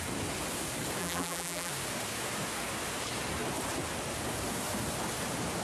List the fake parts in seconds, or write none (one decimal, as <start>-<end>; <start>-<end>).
1.0-1.7